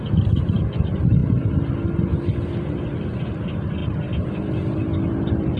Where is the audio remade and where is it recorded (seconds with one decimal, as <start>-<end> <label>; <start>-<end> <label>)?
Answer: 0.0-1.2 remade; 1.2-3.3 recorded; 3.3-5.6 remade